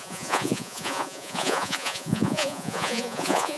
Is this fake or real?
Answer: fake